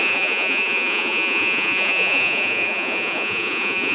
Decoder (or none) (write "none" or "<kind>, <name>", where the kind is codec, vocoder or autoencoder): vocoder, Vocos